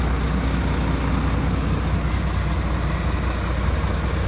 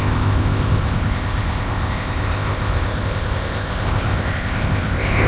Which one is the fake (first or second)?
second